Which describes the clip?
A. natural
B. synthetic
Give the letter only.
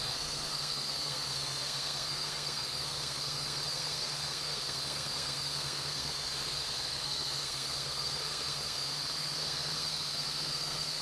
B